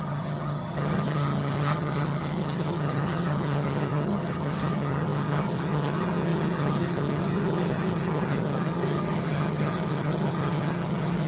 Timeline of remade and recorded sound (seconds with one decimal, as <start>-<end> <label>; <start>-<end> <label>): 0.0-11.3 remade